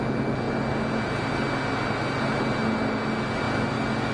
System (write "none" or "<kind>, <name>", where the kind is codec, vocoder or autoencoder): none